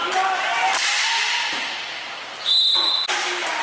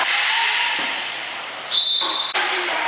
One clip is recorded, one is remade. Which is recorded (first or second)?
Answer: first